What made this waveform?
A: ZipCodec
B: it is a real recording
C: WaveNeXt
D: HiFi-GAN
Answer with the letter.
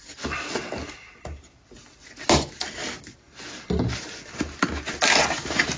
B